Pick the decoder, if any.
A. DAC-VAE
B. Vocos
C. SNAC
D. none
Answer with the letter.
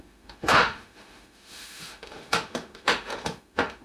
A